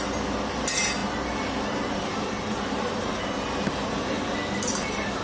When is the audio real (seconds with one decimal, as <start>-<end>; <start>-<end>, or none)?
0.0-5.2